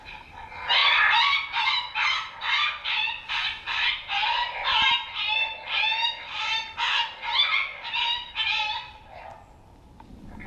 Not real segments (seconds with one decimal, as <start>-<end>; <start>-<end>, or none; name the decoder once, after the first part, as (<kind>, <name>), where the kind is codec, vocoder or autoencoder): none